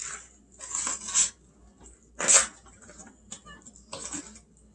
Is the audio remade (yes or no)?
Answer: no